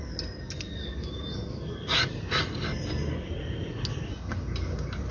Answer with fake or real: real